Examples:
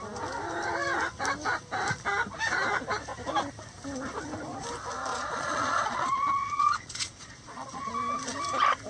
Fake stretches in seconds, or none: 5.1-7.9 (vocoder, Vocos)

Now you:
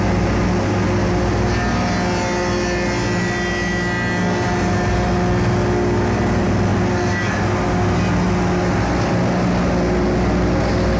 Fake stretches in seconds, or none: none

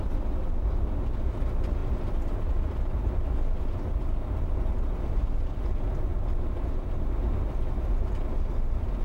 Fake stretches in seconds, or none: none

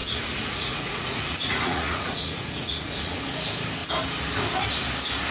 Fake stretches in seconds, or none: 0.0-3.2 (vocoder, Vocos)